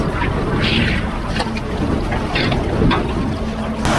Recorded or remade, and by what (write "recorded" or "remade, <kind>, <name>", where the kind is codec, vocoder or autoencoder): recorded